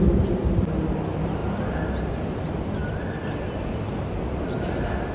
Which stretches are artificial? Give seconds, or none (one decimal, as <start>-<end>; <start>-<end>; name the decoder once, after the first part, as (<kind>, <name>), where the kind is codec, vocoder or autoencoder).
none